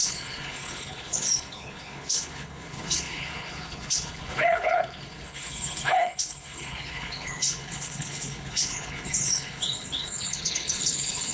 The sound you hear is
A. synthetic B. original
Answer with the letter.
A